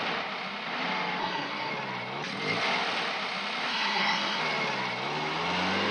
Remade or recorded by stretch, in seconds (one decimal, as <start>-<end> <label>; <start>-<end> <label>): 0.0-1.2 recorded; 1.2-1.7 remade; 1.7-3.7 recorded; 3.7-4.4 remade; 4.4-5.9 recorded